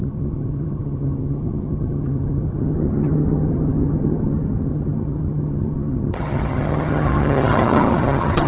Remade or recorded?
remade